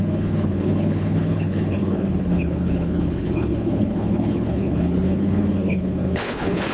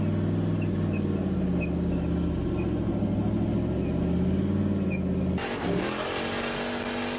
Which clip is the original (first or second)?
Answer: second